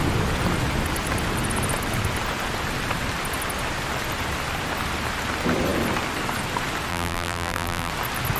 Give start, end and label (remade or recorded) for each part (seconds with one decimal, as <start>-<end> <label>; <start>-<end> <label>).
0.0-6.9 recorded; 6.9-7.9 remade; 7.9-8.4 recorded